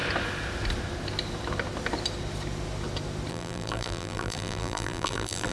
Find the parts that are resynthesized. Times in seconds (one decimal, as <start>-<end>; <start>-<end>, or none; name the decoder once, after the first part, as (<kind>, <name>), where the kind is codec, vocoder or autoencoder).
3.3-5.5 (vocoder, BigVGAN v2)